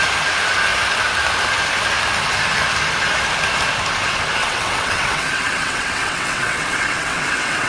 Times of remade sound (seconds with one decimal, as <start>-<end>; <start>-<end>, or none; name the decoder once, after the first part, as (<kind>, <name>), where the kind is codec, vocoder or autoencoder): 4.4-7.7 (vocoder, WaveNeXt)